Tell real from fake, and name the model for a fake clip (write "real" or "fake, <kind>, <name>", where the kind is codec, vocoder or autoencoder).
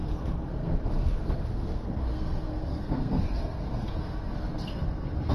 fake, codec, SNAC